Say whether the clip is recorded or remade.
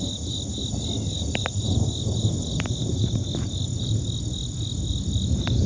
recorded